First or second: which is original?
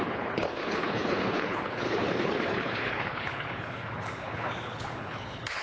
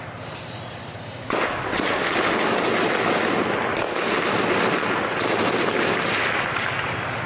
second